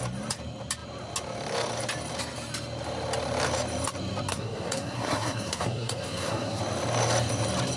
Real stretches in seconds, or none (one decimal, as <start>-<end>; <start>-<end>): 0.0-4.3; 6.6-7.8